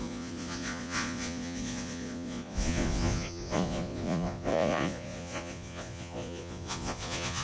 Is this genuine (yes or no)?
no